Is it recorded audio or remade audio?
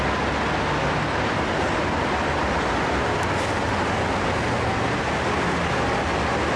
recorded